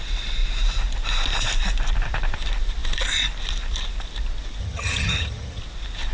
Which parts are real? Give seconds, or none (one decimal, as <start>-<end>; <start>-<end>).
0.0-4.6; 5.6-6.1